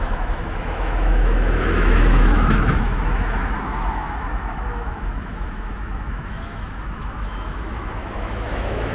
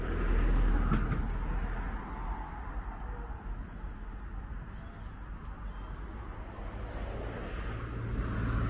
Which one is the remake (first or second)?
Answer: first